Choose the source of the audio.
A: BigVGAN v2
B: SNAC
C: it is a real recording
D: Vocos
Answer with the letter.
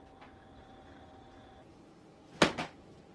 C